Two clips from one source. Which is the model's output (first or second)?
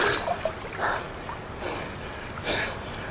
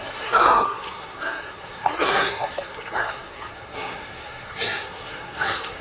second